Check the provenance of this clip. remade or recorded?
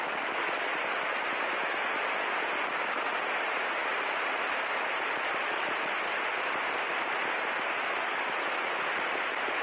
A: recorded